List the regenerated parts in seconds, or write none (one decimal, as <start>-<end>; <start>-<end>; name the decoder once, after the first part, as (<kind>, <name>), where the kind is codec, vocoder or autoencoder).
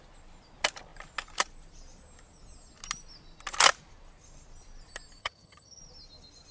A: 5.2-5.8 (vocoder, HiFi-GAN)